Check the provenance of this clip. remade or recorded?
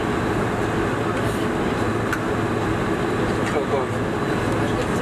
recorded